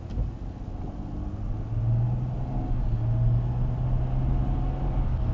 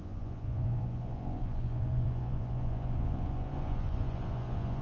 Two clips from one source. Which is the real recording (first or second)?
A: first